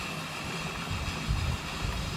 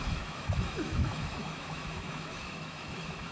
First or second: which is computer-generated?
second